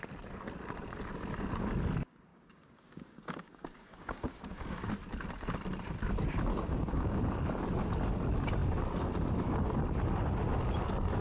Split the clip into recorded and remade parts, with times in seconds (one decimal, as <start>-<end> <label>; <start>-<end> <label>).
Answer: 0.0-2.3 recorded; 2.3-4.9 remade; 4.9-6.5 recorded; 6.5-7.2 remade; 7.2-11.2 recorded